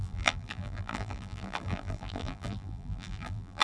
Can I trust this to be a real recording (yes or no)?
no